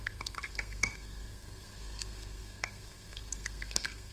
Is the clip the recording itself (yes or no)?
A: no